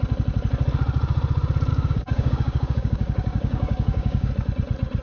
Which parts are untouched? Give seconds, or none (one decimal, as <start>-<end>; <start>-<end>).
0.0-1.7; 4.3-5.0